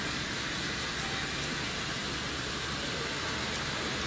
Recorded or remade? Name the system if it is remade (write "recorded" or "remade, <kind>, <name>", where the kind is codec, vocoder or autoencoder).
recorded